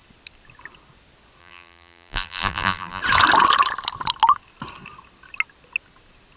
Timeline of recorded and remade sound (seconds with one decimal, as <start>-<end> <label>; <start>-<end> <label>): 0.0-1.4 recorded; 1.4-3.0 remade; 3.0-6.4 recorded